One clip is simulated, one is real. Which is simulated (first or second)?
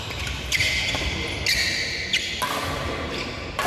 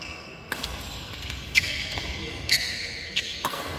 second